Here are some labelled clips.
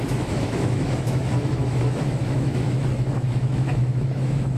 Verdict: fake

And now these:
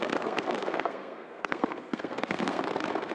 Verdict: fake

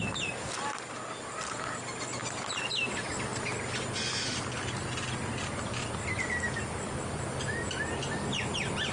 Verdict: real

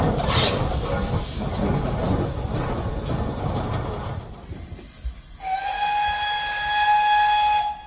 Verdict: real